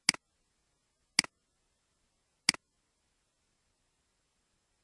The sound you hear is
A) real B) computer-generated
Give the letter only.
A